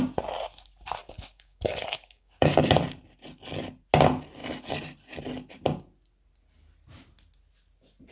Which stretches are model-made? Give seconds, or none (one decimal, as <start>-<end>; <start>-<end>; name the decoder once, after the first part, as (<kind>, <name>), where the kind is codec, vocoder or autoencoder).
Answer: 1.0-2.7 (codec, DAC)